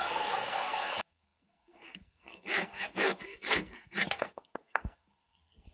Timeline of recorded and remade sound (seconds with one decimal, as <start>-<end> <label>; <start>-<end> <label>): 0.0-5.7 remade